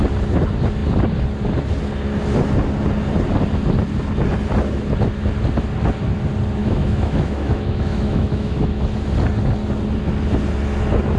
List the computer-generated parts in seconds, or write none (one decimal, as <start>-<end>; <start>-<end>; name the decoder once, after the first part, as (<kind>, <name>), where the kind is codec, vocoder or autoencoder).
6.6-8.8 (autoencoder, DAC-VAE)